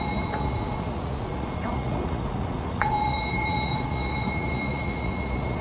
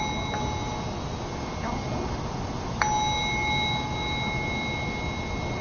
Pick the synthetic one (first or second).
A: first